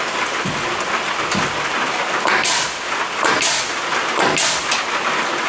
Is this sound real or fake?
real